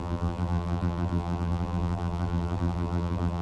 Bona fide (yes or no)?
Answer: no